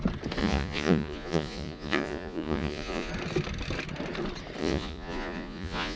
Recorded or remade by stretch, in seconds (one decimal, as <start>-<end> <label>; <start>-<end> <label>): 0.0-0.4 recorded; 0.4-3.1 remade; 3.1-4.6 recorded; 4.6-6.0 remade

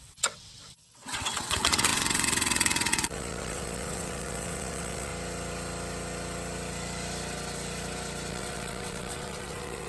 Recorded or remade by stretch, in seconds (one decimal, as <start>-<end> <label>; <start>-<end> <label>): 0.0-5.1 remade; 5.1-8.3 recorded; 8.3-9.9 remade

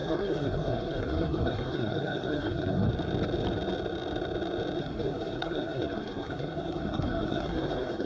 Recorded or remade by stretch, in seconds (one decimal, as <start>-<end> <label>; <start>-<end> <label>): 0.0-2.9 remade; 2.9-4.8 recorded; 4.8-8.1 remade

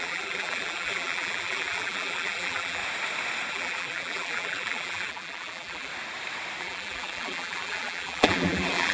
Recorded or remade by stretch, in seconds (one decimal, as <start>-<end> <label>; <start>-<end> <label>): 0.0-2.8 remade; 2.8-3.5 recorded; 3.5-5.9 remade; 5.9-6.6 recorded; 6.6-8.9 remade

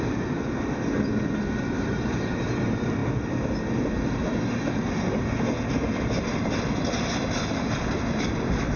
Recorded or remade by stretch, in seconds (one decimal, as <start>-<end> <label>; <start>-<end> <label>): 0.0-8.8 recorded

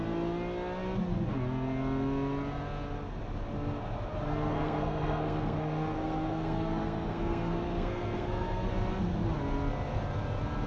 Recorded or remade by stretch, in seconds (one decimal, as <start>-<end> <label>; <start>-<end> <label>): 0.0-4.5 recorded; 4.5-8.7 remade; 8.7-10.7 recorded